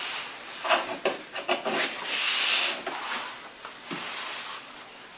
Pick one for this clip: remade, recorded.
recorded